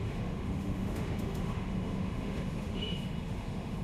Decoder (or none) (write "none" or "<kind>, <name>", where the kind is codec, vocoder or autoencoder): autoencoder, DAC-VAE